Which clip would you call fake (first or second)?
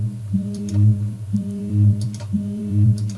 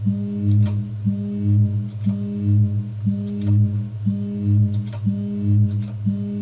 first